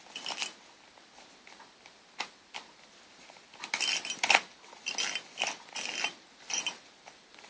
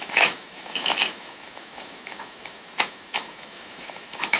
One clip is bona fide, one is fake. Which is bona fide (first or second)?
first